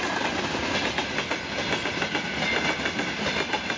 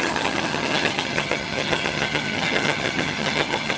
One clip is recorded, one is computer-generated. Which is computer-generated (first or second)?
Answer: second